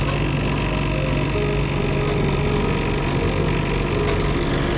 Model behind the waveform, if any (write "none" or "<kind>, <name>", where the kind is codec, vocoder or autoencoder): none